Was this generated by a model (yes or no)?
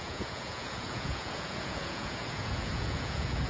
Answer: yes